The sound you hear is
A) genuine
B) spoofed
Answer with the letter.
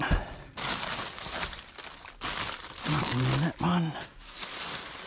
A